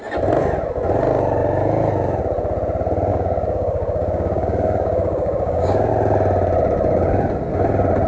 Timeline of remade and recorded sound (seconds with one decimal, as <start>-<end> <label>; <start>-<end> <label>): 0.0-3.1 recorded; 3.1-5.9 remade; 5.9-8.1 recorded